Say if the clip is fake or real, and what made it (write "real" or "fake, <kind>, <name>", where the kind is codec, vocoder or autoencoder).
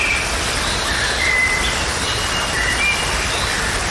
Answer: real